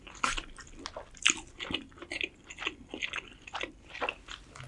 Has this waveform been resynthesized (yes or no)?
no